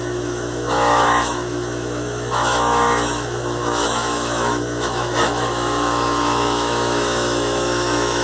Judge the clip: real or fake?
fake